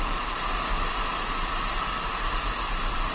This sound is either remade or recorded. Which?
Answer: recorded